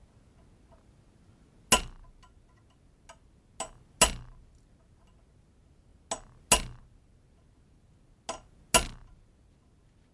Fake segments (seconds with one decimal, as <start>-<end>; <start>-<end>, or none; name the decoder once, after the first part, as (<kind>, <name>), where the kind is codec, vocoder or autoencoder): none